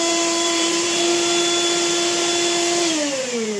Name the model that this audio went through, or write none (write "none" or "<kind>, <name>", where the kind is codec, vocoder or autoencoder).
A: vocoder, BigVGAN v2